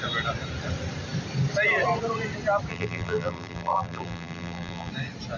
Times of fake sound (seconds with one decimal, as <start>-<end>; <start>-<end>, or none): 2.7-4.9